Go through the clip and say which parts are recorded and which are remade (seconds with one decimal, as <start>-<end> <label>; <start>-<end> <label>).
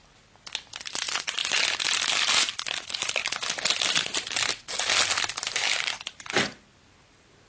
0.0-7.5 recorded